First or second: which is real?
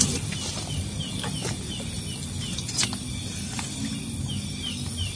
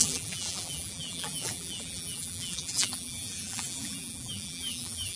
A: first